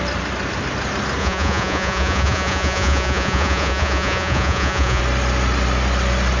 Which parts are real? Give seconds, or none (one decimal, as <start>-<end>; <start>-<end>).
0.0-1.2; 5.0-6.4